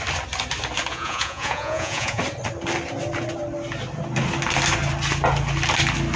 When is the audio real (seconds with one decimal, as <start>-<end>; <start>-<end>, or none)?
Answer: 0.0-0.9; 2.2-6.2